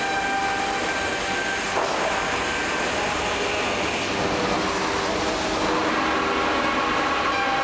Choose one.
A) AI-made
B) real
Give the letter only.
B